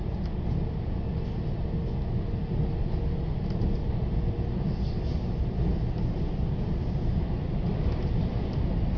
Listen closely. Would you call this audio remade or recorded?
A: recorded